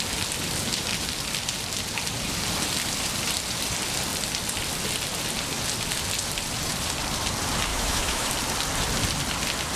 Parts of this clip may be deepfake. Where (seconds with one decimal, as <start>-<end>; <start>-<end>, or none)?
7.7-8.3